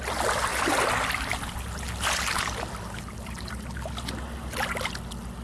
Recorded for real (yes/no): yes